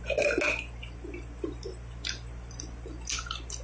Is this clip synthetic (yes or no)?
no